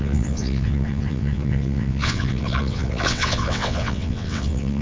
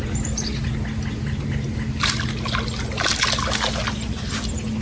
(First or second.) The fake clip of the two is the first